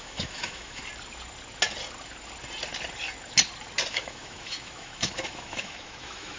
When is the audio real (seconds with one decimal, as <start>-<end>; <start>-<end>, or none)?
0.8-3.9